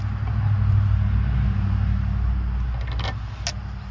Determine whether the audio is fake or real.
real